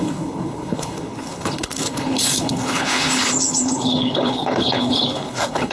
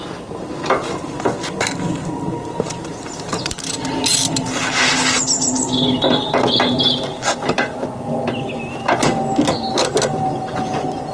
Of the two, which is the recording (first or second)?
second